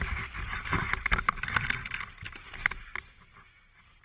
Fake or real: real